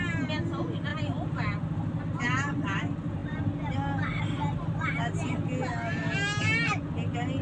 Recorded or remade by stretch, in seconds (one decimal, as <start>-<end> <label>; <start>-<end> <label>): 0.0-7.4 recorded